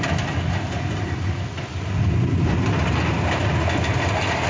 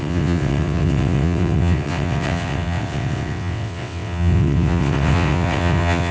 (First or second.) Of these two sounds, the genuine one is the first